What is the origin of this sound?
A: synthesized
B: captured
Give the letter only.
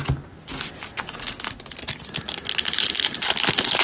B